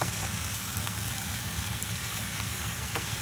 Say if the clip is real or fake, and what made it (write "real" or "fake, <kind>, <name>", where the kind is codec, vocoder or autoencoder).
fake, codec, SNAC